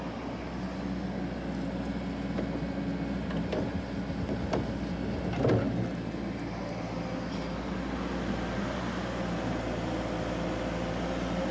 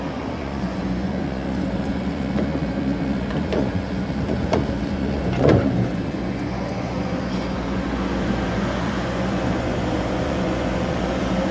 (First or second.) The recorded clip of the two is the first